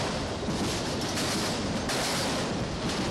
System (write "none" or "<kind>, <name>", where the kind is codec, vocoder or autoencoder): vocoder, BigVGAN v2